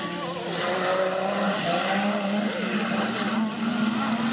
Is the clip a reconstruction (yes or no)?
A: no